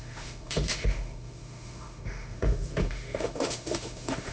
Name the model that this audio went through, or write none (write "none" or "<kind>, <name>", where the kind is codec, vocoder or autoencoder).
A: autoencoder, DAC-VAE